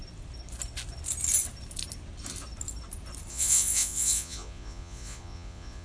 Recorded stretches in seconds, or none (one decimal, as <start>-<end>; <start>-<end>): 0.0-3.3